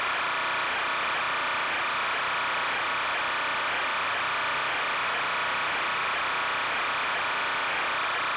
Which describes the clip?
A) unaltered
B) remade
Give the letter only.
B